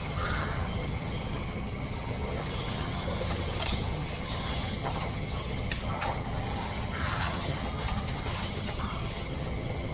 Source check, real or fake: fake